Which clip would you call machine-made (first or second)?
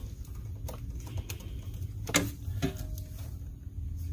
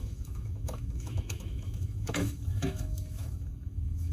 second